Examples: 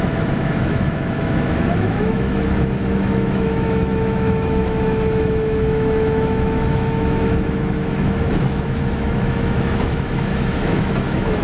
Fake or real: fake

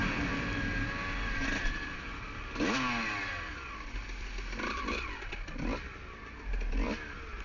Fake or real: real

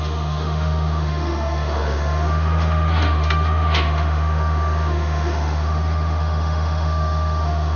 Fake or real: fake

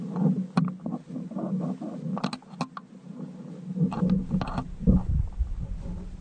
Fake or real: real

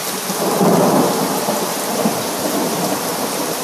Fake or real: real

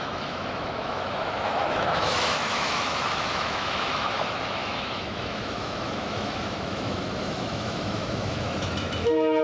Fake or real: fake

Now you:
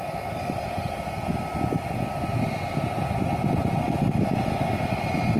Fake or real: real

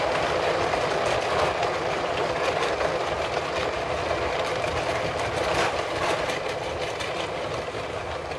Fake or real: real